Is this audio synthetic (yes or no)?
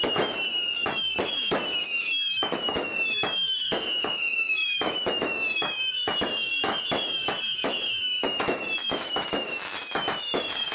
yes